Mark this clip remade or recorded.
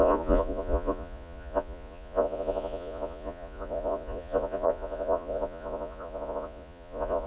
remade